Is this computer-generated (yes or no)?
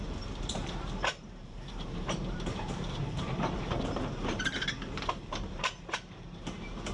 yes